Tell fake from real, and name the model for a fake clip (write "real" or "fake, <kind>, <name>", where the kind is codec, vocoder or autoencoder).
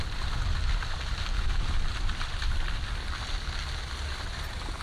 real